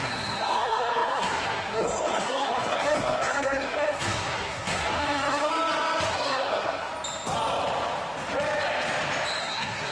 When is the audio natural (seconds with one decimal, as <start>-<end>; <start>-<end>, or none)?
5.5-6.1; 6.9-9.4